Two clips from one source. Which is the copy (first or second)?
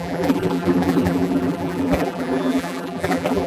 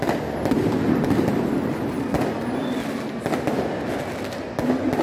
first